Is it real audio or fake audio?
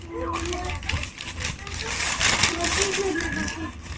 real